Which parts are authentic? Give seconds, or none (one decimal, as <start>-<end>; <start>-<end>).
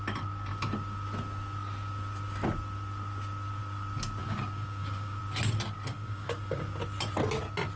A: 0.0-4.2; 5.2-5.9; 6.7-7.8